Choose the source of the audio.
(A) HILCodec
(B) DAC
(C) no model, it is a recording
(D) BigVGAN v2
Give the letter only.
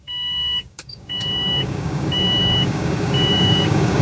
B